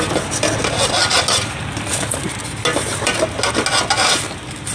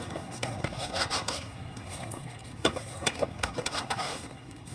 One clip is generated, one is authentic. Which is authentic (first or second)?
first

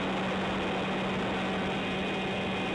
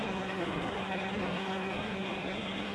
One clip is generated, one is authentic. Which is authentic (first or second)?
first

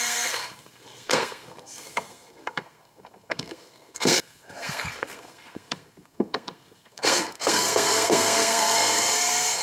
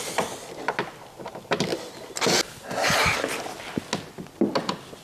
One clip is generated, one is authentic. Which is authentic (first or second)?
second